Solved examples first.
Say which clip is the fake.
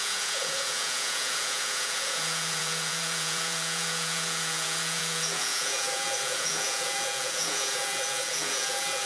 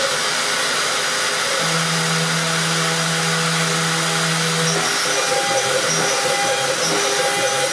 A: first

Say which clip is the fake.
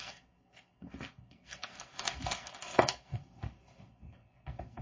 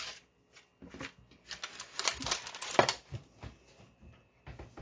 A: first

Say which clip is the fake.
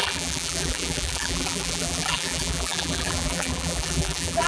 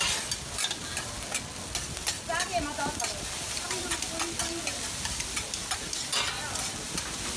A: first